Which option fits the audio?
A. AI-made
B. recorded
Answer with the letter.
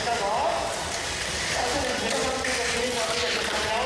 B